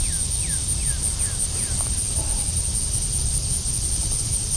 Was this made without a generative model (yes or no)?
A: yes